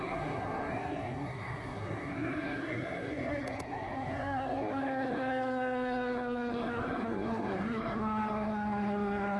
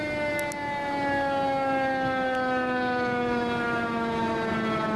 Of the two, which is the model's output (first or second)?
first